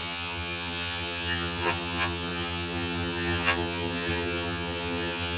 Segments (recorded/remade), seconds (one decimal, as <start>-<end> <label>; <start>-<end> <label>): 0.0-5.4 remade